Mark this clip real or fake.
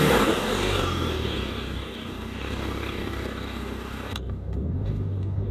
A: fake